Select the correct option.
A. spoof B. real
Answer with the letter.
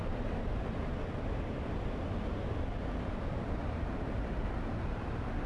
B